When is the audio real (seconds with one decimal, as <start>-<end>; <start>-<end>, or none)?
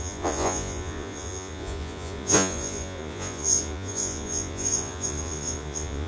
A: none